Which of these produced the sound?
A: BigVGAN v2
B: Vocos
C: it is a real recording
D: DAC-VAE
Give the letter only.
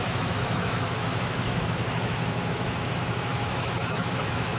D